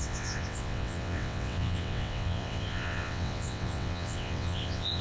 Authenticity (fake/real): fake